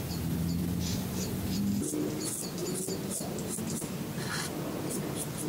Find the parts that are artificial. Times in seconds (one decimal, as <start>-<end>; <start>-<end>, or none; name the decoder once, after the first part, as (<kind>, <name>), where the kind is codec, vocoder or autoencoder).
0.6-1.6 (vocoder, BigVGAN v2)

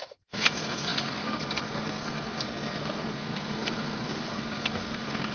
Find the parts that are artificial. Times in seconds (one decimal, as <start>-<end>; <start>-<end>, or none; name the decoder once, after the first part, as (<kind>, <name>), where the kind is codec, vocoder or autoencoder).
0.0-5.3 (codec, SNAC)

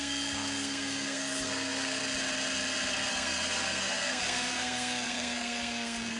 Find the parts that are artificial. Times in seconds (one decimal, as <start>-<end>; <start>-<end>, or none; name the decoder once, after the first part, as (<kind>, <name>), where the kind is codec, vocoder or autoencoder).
0.0-2.0 (codec, SNAC); 3.1-6.2

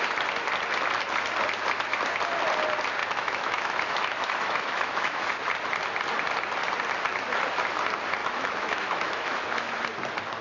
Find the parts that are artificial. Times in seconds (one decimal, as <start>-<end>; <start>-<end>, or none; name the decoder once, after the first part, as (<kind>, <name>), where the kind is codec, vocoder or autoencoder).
3.0-5.5 (autoencoder, DAC-VAE); 8.2-9.8